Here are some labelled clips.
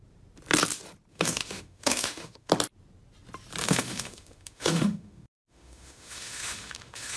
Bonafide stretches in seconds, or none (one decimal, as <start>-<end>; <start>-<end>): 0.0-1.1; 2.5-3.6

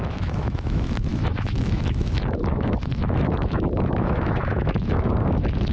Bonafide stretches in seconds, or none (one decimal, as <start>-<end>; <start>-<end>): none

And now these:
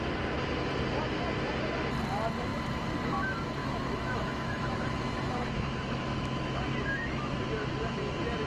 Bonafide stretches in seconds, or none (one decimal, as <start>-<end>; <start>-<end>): 0.0-3.6; 7.4-8.5